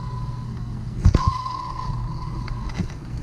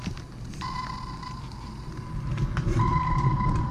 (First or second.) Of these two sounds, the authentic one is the second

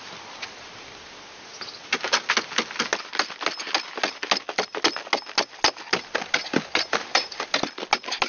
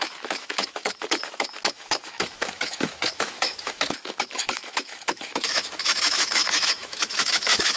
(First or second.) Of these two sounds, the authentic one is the first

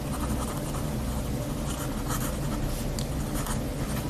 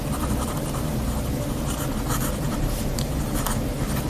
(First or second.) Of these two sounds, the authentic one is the first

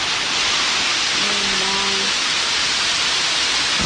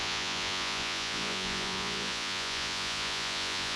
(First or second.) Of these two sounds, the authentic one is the first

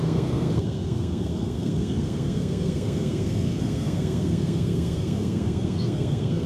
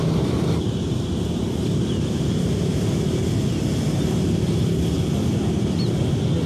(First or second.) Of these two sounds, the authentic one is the second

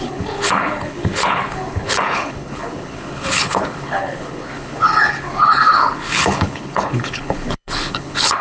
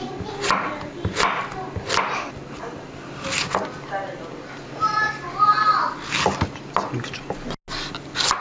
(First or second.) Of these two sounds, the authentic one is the second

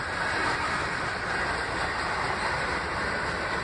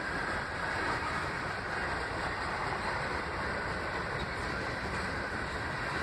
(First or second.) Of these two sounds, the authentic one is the first